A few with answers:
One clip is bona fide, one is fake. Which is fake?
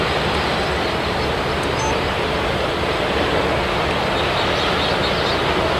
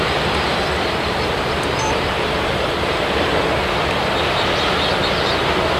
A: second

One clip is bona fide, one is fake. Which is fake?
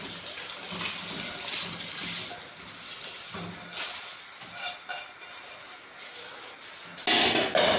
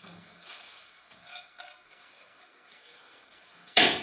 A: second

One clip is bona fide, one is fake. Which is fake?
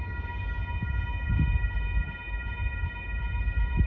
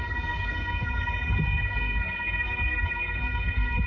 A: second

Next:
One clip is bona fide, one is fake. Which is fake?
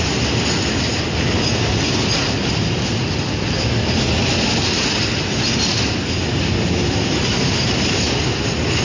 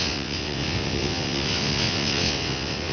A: second